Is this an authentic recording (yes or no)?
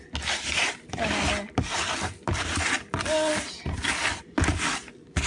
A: yes